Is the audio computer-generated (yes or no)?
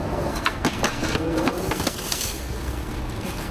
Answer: yes